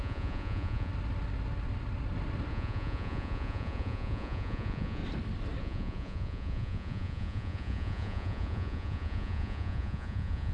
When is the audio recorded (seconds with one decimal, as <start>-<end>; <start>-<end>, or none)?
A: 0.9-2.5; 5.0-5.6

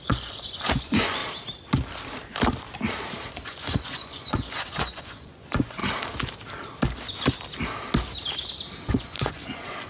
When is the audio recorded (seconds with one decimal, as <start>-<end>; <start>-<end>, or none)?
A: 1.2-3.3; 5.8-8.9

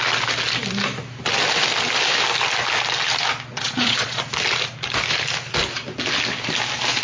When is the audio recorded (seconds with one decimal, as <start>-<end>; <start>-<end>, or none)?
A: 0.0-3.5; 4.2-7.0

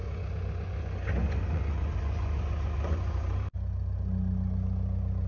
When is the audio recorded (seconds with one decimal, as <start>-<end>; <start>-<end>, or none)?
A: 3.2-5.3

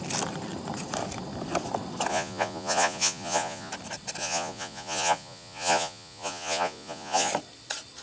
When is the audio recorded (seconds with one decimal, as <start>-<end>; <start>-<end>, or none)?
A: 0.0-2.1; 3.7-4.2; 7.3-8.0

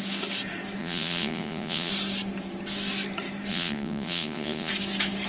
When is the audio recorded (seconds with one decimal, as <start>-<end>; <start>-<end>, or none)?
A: 0.0-0.8; 1.9-3.5; 4.7-5.3

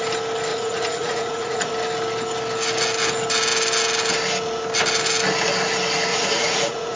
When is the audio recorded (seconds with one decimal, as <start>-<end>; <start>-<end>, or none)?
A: 0.0-0.5; 1.7-6.1